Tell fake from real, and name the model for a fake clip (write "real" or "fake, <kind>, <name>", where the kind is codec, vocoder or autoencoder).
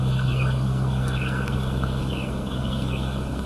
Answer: fake, codec, SNAC